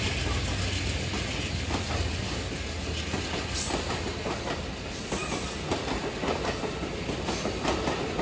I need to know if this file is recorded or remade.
recorded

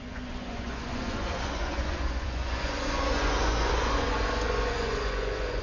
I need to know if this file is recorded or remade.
remade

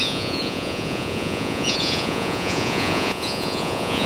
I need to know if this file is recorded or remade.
remade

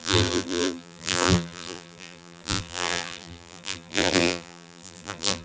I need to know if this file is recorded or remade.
remade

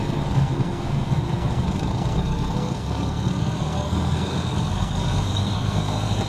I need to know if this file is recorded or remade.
remade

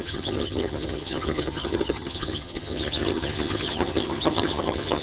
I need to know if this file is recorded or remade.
remade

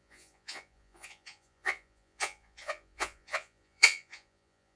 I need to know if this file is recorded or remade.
remade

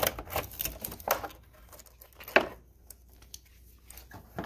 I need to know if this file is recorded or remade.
recorded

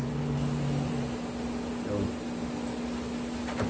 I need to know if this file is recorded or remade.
recorded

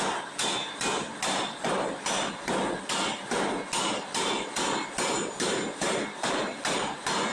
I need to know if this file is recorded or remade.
recorded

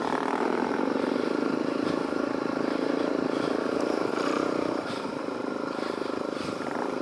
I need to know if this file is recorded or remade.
remade